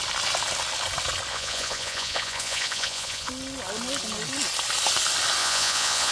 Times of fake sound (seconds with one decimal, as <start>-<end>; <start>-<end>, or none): 1.3-3.3; 5.4-6.1